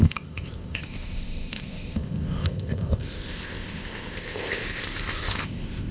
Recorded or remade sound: remade